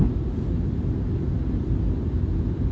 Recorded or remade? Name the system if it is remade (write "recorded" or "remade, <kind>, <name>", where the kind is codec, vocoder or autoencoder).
recorded